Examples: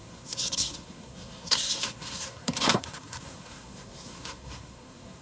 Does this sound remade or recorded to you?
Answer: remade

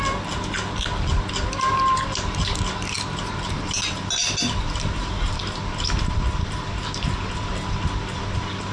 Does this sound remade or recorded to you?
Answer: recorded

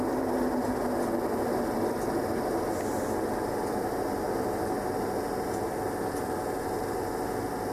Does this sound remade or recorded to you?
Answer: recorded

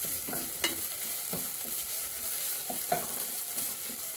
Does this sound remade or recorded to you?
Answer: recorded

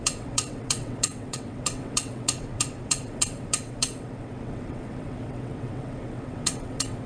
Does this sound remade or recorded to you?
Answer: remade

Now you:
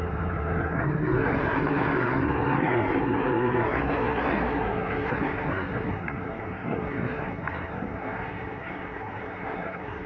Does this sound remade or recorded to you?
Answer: remade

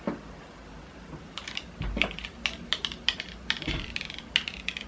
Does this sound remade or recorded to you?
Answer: recorded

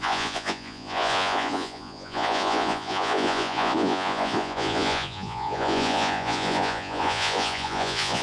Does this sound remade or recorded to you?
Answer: remade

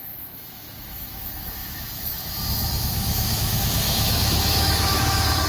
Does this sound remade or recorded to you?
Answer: remade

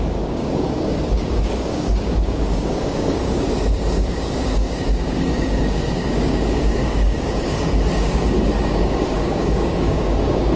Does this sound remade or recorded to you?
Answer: remade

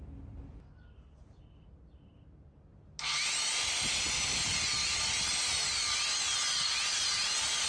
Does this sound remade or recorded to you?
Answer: recorded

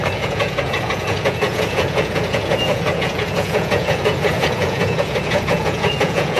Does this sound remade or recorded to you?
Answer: remade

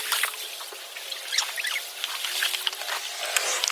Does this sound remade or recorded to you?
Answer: recorded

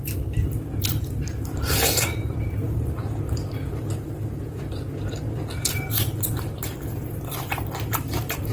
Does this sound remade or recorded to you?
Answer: remade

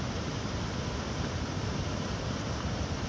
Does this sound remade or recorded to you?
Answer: recorded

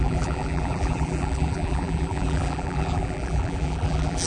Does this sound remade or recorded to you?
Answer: remade